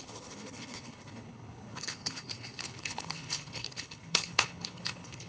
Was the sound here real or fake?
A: fake